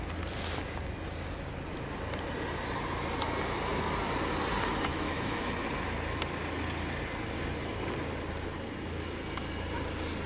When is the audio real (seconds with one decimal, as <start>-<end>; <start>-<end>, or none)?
0.0-4.9; 5.5-10.3